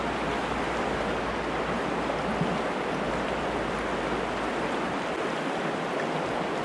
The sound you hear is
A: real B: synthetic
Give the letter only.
A